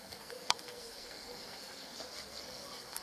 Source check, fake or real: fake